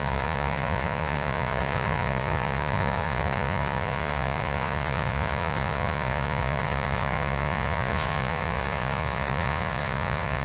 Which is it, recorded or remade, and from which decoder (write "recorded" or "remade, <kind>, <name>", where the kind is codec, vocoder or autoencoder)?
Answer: remade, vocoder, Vocos